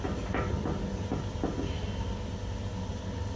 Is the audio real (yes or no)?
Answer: yes